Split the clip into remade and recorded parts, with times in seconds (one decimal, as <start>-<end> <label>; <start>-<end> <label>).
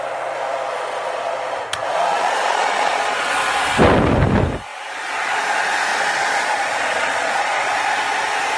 0.0-0.7 recorded; 0.7-1.2 remade; 1.2-2.1 recorded; 2.1-3.3 remade; 3.3-5.9 recorded; 5.9-7.7 remade; 7.7-8.6 recorded